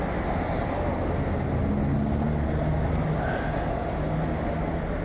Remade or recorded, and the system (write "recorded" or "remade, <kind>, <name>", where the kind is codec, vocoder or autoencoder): recorded